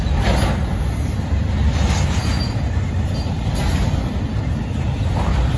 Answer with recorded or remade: recorded